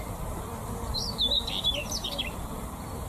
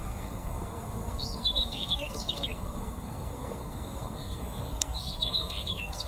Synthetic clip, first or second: second